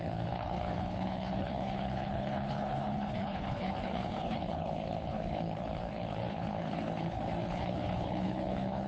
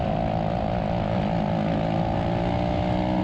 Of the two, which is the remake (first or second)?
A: first